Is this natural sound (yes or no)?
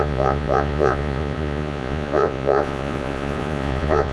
no